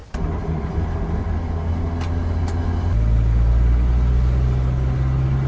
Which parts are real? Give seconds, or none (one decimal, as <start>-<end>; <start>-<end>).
1.2-5.5